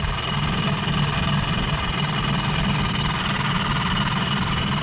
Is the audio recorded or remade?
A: recorded